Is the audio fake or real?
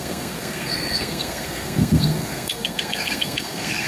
fake